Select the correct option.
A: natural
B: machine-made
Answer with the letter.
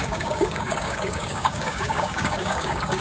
B